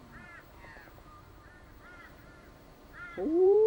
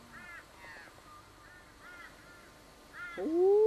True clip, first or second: second